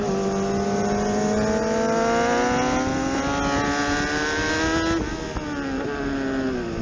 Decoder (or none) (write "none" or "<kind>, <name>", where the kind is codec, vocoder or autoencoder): none